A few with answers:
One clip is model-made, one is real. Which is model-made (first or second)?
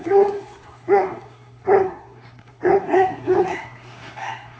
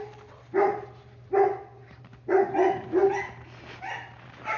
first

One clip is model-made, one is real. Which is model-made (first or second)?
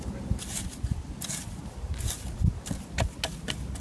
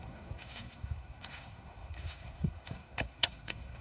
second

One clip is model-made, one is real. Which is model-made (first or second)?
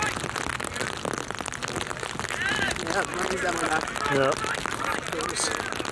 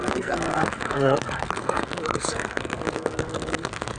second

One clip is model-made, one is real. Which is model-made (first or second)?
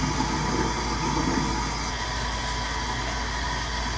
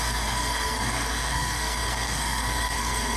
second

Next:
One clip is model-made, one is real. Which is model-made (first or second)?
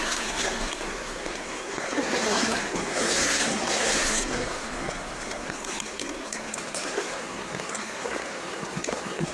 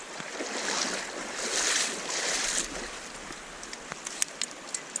first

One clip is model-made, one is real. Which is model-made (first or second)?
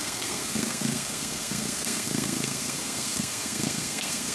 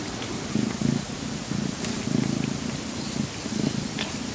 first